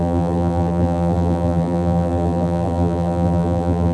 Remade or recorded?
remade